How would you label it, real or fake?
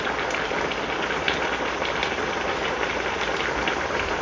real